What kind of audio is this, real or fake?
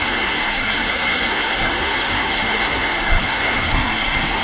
fake